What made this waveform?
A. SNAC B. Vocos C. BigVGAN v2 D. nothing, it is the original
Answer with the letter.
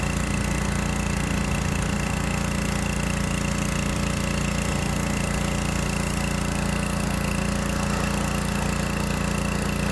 D